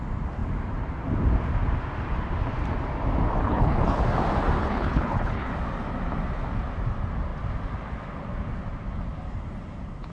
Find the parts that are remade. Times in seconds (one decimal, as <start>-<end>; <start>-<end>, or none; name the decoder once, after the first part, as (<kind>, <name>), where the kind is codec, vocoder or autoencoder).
3.4-4.0 (codec, HILCodec); 4.6-5.5